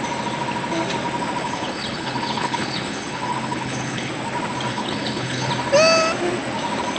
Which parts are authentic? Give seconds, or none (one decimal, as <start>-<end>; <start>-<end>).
0.0-1.4; 4.1-4.7; 5.5-7.0